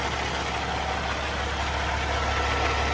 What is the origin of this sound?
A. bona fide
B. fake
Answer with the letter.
A